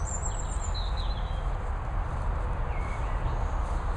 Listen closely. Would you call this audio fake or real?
real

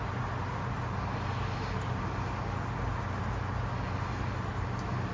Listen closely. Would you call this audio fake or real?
real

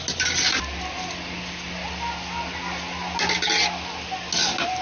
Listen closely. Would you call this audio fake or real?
real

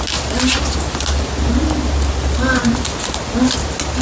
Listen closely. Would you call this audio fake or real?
real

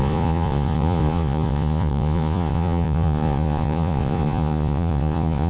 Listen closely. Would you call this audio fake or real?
fake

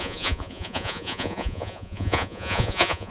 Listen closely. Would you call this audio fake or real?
fake